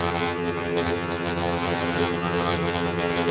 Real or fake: fake